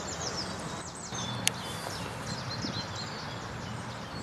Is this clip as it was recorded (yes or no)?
no